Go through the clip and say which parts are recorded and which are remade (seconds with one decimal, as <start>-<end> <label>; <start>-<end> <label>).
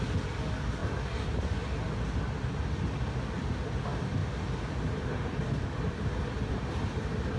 0.0-7.4 recorded